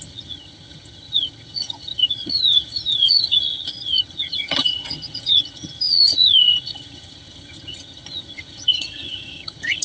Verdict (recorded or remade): remade